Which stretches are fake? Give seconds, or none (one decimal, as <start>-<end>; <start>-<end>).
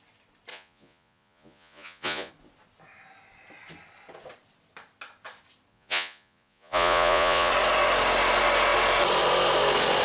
0.5-2.3; 5.7-7.5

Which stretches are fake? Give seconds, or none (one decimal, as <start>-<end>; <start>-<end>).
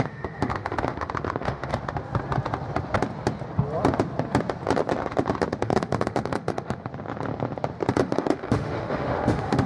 0.0-1.7; 5.6-6.9; 7.9-9.7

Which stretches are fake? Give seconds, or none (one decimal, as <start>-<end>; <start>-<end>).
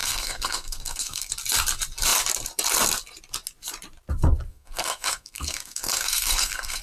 0.0-1.3; 4.5-6.8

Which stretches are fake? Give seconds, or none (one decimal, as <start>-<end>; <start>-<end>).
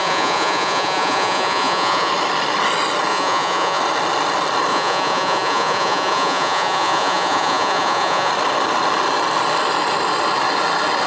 0.0-2.1; 3.1-3.8; 4.7-8.3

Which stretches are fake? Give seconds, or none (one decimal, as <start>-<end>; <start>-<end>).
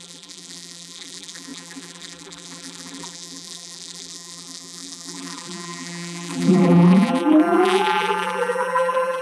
0.0-9.2